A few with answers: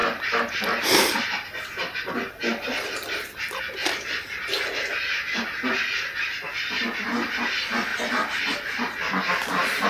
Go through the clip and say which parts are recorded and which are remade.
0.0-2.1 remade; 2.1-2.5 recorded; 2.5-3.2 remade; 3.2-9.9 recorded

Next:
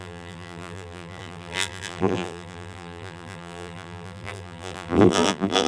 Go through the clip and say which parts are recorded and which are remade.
0.0-5.7 remade

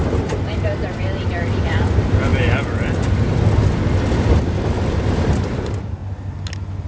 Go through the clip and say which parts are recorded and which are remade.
0.0-2.3 remade; 2.3-5.1 recorded; 5.1-6.0 remade; 6.0-6.9 recorded

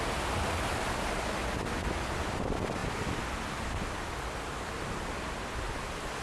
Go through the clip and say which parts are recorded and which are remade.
0.0-2.8 recorded; 2.8-5.5 remade; 5.5-6.2 recorded

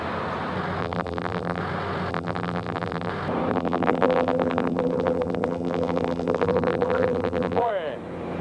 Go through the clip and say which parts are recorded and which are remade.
0.0-0.8 recorded; 0.8-1.6 remade; 1.6-2.1 recorded; 2.1-3.1 remade; 3.1-3.5 recorded; 3.5-7.7 remade; 7.7-8.4 recorded

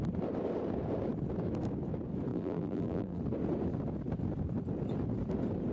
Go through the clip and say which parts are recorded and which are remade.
0.0-2.3 recorded; 2.3-3.2 remade; 3.2-5.7 recorded

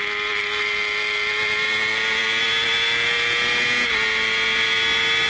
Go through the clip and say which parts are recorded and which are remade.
0.0-5.3 recorded